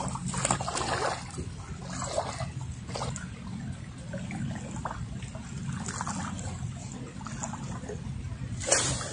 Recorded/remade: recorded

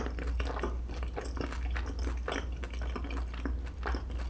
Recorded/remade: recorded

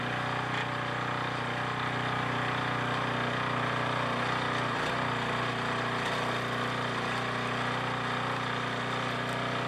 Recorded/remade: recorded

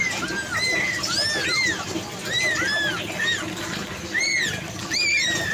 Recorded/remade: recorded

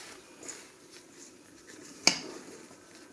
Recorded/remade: recorded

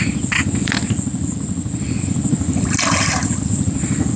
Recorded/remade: recorded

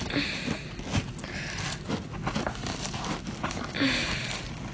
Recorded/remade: recorded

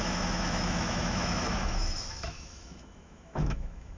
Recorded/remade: remade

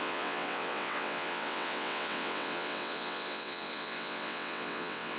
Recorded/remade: remade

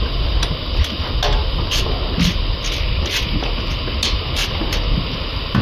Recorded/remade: recorded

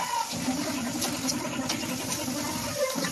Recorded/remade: recorded